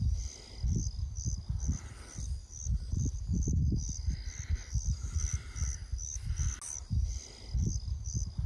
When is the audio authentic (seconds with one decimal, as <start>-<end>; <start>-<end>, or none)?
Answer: 0.0-8.5